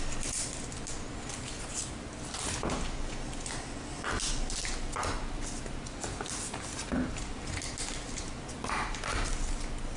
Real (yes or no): yes